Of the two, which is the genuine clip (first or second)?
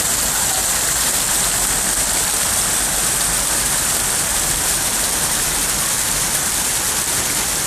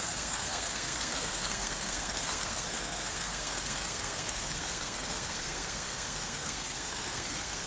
first